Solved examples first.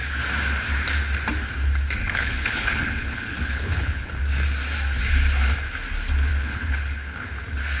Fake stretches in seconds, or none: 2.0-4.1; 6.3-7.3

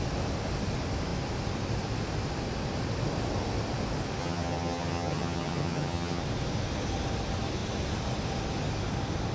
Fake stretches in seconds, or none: 4.2-6.2

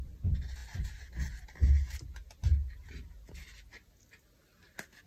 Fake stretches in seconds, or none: none

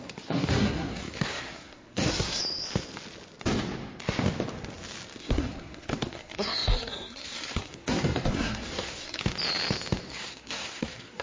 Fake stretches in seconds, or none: 0.0-2.4; 5.2-9.2; 10.1-11.2

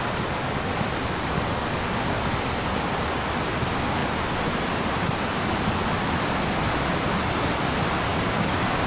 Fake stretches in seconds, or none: 8.1-8.9

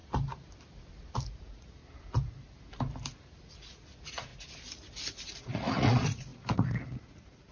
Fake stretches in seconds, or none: 1.3-1.8; 3.5-4.3; 5.4-7.5